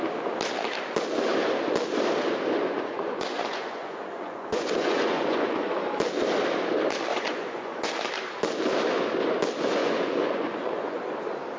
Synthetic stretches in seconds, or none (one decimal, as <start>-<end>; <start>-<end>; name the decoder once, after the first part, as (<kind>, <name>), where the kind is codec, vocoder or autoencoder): 2.6-5.8 (vocoder, Vocos); 7.1-7.9; 9.8-11.0